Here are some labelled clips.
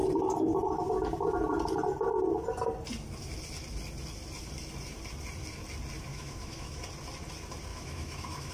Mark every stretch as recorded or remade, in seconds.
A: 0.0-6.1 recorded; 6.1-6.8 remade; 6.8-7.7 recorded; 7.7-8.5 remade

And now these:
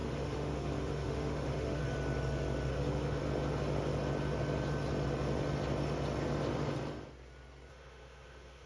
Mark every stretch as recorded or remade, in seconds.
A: 0.0-1.8 remade; 1.8-2.7 recorded; 2.7-3.2 remade; 3.2-7.7 recorded; 7.7-8.7 remade

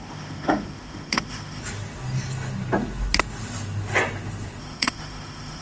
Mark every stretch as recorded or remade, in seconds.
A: 0.0-1.6 remade; 1.6-4.6 recorded; 4.6-5.6 remade

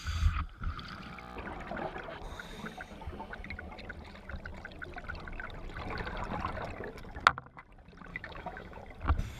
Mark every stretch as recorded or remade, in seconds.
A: 0.0-8.1 recorded; 8.1-8.8 remade; 8.8-9.4 recorded

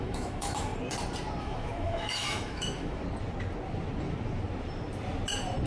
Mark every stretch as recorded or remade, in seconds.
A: 0.0-0.7 remade; 0.7-1.4 recorded; 1.4-3.0 remade; 3.0-5.7 recorded